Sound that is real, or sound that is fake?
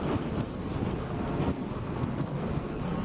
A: fake